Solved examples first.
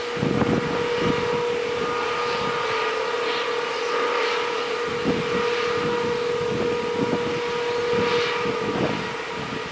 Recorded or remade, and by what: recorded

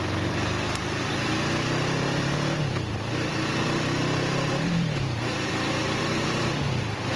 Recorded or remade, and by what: remade, vocoder, BigVGAN v2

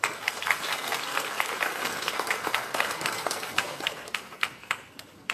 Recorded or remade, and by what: remade, codec, SNAC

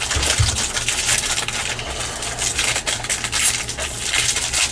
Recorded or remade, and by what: recorded